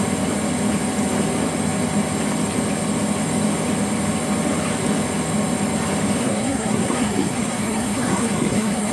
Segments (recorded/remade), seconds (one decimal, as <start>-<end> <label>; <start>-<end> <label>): 0.0-6.2 recorded; 6.2-8.9 remade